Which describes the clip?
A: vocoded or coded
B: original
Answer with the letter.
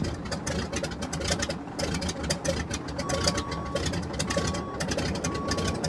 B